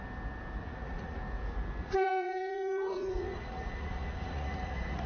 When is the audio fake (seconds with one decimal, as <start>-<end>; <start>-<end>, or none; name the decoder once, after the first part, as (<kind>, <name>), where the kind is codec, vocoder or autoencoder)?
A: 0.6-1.2 (vocoder, Vocos); 1.8-5.1